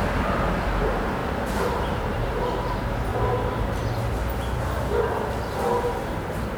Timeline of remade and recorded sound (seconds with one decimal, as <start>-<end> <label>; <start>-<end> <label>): 0.0-3.1 remade; 3.1-6.0 recorded; 6.0-6.6 remade